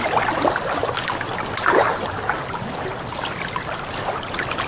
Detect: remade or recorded recorded